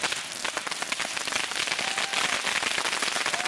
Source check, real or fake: real